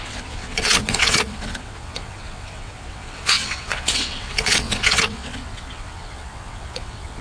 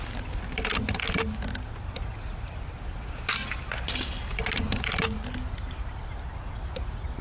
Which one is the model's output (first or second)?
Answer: first